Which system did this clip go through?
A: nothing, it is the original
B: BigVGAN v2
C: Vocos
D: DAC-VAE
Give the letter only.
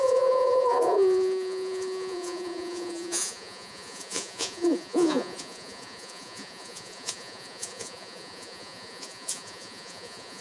C